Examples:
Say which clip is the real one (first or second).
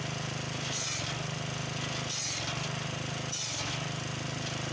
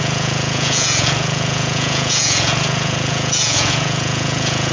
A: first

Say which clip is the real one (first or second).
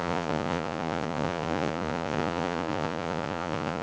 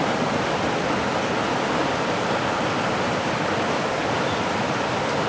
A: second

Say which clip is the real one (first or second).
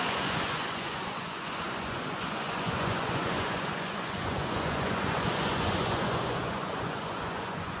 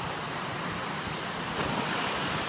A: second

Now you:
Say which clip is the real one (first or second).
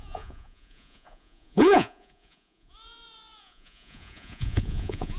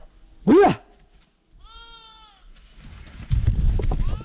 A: second